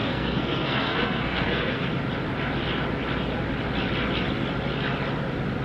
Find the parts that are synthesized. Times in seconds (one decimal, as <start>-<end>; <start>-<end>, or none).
0.0-1.9

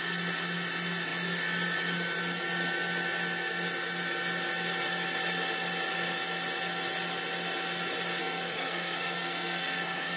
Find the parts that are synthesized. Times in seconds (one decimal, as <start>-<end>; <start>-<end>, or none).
8.2-10.2